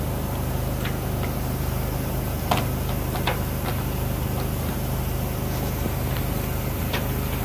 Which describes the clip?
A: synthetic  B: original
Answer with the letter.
A